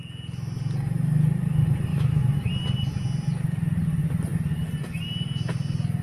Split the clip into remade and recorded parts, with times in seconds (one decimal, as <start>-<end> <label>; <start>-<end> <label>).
0.0-1.9 recorded; 1.9-2.5 remade; 2.5-6.0 recorded